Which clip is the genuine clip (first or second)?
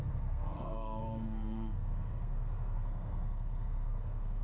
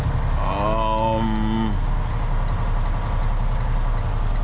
second